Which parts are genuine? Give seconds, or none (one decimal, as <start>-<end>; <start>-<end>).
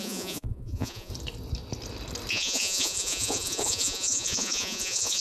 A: 1.1-2.3